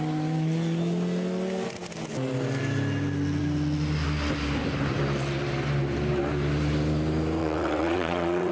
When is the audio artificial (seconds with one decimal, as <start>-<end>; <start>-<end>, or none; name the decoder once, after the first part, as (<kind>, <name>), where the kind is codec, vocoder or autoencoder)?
7.4-8.5 (vocoder, WaveNeXt)